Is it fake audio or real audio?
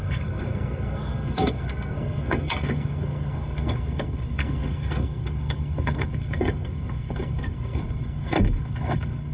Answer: fake